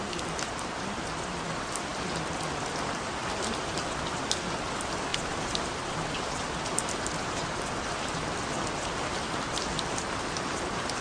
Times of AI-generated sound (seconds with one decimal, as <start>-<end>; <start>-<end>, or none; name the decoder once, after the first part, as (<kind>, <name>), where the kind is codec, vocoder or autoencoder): none